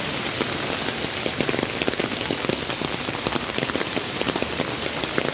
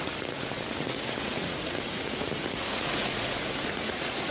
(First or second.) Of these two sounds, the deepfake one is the second